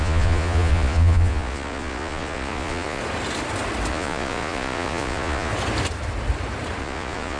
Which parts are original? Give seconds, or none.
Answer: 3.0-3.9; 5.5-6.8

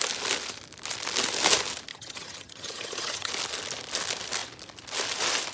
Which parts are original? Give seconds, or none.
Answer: 0.0-1.9; 3.3-5.5

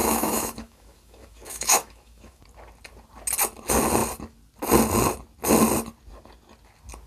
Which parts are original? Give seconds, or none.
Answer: 2.4-7.1

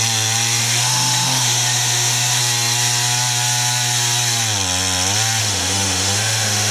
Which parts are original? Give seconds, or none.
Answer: 0.0-0.6; 2.4-5.4

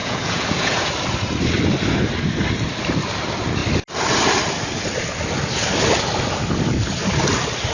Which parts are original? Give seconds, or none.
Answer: 0.9-7.7